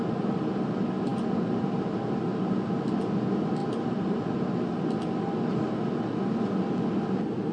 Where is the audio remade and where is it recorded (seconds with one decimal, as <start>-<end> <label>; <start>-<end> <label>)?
0.0-3.6 recorded; 3.6-4.3 remade; 4.3-7.5 recorded

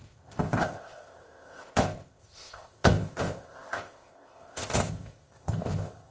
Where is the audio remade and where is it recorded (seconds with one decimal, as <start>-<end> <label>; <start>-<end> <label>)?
0.0-6.1 remade

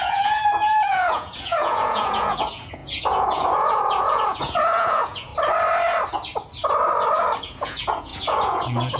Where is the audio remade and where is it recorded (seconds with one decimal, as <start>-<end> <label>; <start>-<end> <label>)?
0.0-5.3 remade; 5.3-7.4 recorded; 7.4-9.0 remade

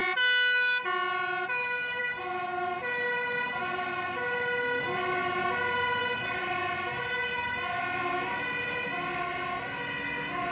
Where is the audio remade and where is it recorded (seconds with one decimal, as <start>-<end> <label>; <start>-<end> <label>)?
0.0-10.5 recorded

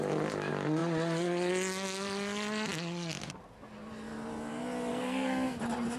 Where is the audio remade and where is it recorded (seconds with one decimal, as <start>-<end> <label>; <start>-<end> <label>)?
0.0-4.9 recorded; 4.9-5.6 remade; 5.6-6.0 recorded

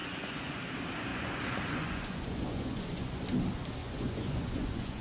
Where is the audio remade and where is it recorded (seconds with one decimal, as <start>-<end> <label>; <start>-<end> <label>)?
0.0-0.6 remade; 0.6-1.1 recorded; 1.1-3.2 remade; 3.2-3.8 recorded; 3.8-5.0 remade

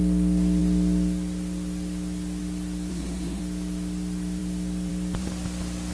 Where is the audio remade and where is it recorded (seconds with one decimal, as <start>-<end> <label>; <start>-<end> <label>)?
0.0-2.9 recorded; 2.9-3.4 remade; 3.4-5.9 recorded